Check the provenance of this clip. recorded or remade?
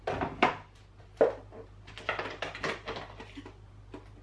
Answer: recorded